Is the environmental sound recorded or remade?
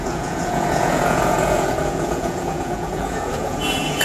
remade